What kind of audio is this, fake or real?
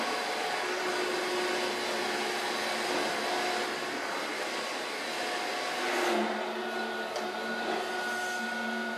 real